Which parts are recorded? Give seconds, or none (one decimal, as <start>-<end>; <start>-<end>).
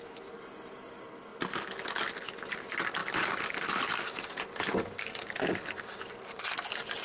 0.0-3.0; 6.0-7.0